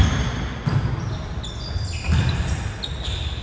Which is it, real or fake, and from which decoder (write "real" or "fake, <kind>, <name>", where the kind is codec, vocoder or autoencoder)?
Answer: real